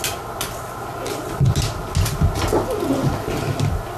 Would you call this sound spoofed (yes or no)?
no